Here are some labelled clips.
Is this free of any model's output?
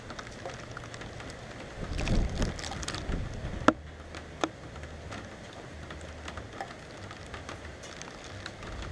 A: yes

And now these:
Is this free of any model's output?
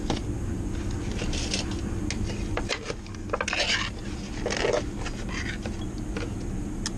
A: yes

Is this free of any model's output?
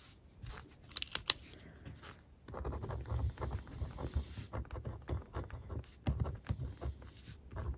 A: yes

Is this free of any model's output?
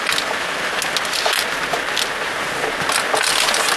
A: yes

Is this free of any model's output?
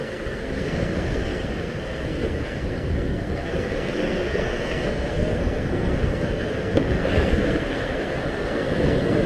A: no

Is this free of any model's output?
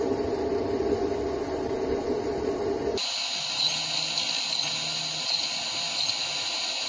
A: yes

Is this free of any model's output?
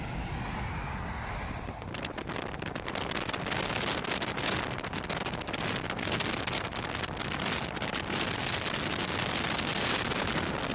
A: yes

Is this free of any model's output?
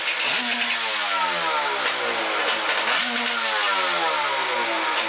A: yes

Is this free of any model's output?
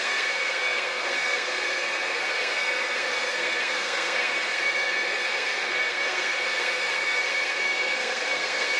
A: no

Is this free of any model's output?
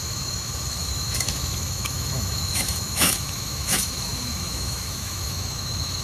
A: no